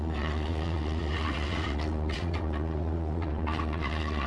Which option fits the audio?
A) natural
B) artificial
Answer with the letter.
B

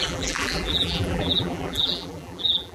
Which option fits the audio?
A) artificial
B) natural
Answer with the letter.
A